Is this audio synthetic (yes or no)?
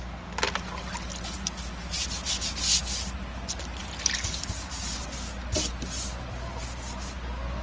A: no